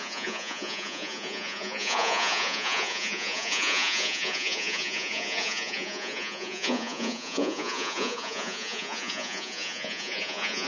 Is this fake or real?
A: fake